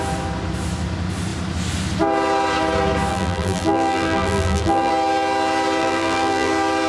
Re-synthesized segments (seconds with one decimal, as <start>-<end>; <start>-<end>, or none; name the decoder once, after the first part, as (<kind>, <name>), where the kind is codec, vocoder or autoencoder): 3.1-4.9 (vocoder, BigVGAN v2); 5.8-6.5